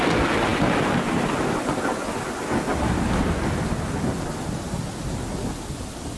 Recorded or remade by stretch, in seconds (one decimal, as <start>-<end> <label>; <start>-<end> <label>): 0.0-6.2 recorded